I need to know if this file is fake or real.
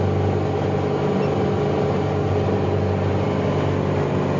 real